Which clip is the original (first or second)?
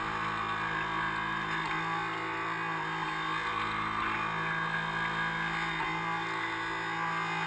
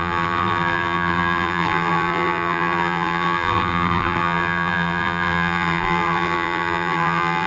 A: first